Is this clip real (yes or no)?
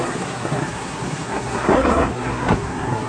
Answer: no